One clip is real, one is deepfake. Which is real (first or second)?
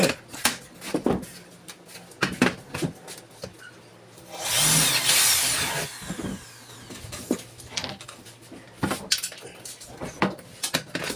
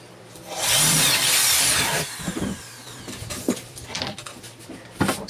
first